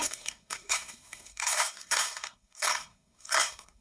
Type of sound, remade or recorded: remade